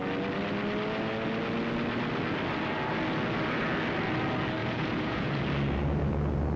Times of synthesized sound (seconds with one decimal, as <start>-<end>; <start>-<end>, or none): 4.6-5.4